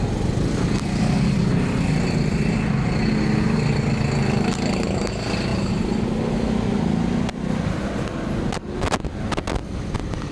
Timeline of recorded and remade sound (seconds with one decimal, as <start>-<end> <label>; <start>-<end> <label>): 0.0-10.3 recorded